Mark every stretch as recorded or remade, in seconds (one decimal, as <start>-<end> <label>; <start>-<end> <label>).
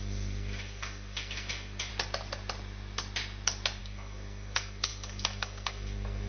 0.0-1.9 remade; 1.9-3.8 recorded; 3.8-6.3 remade